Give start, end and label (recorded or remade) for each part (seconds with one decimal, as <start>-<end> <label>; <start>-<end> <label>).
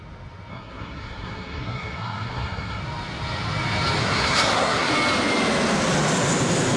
0.0-0.5 recorded; 0.5-2.8 remade; 2.8-4.0 recorded; 4.0-4.9 remade; 4.9-6.8 recorded